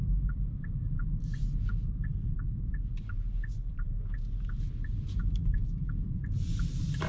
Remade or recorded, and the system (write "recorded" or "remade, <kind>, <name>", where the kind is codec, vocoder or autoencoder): remade, vocoder, BigVGAN v2